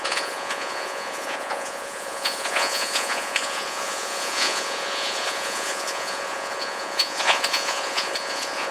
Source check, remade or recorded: remade